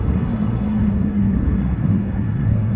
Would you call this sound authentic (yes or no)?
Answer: no